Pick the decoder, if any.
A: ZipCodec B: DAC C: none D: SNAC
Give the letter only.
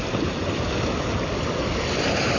C